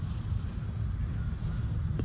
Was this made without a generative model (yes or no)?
yes